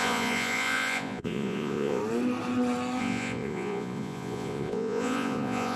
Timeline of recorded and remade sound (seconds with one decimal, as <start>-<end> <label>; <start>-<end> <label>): 0.0-2.0 remade; 2.0-3.0 recorded; 3.0-5.8 remade